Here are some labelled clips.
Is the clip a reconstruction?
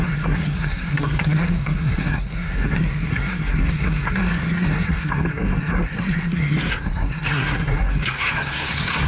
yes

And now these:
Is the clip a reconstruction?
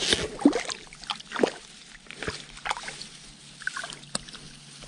no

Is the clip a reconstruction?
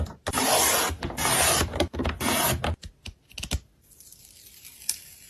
no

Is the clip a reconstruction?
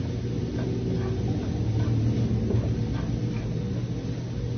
no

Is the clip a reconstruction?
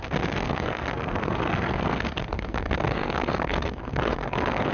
yes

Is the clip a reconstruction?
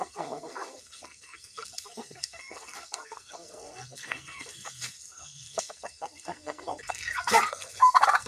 yes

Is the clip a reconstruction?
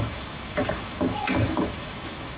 yes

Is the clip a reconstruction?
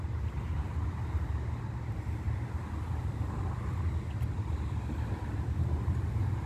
no